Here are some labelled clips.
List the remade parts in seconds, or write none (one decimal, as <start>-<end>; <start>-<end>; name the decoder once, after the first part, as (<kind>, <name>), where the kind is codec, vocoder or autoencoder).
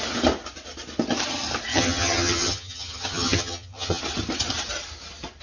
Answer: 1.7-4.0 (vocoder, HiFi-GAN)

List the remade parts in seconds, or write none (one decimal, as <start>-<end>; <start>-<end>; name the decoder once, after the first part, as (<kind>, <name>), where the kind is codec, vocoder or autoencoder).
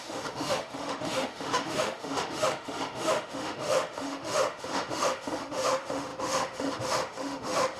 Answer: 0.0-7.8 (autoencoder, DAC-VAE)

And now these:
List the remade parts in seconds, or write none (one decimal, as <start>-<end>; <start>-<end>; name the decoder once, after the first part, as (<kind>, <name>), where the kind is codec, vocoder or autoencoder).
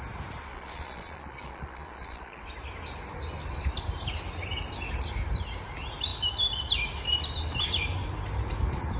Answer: 0.5-2.4 (vocoder, Vocos)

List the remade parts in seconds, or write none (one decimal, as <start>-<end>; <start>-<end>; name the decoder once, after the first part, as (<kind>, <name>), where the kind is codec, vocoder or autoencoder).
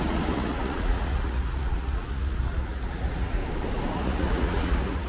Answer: 0.0-3.4 (vocoder, Vocos); 3.9-5.1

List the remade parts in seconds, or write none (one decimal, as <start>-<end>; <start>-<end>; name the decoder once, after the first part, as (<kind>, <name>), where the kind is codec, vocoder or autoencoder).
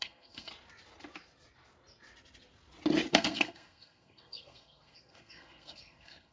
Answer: 0.0-0.5 (codec, SNAC); 3.1-6.3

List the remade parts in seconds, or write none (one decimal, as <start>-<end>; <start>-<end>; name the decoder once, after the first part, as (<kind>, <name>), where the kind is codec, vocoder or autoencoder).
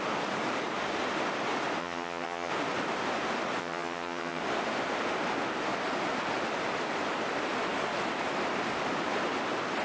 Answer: 1.8-2.5 (vocoder, HiFi-GAN); 3.6-4.4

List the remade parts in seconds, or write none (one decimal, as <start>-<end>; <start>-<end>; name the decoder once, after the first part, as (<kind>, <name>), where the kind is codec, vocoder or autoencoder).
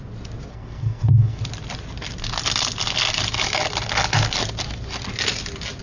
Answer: 0.5-1.4 (codec, SNAC)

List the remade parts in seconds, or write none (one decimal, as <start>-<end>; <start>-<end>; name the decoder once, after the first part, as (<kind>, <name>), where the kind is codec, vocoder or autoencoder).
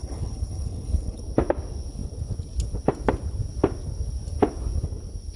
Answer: 0.0-1.2 (codec, HILCodec)